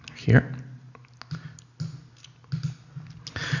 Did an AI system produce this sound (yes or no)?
no